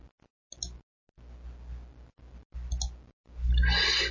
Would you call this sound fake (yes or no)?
no